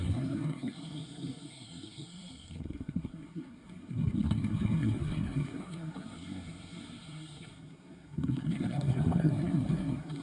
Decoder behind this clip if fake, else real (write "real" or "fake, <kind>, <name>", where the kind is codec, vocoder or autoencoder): fake, codec, SNAC